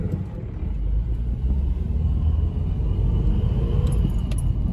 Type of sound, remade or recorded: recorded